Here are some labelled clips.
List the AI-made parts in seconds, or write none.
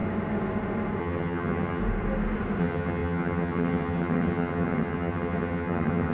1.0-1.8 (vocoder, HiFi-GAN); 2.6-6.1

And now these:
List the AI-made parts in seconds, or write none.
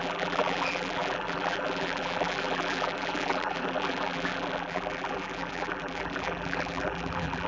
0.0-7.5 (vocoder, BigVGAN v2)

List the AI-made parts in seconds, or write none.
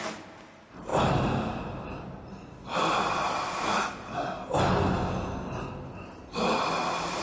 none